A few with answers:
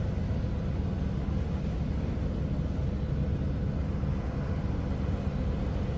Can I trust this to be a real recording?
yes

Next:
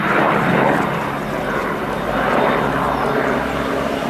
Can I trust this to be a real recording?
yes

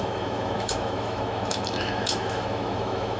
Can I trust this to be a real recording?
no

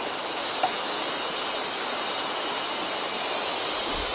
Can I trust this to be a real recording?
yes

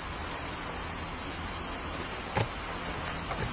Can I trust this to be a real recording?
yes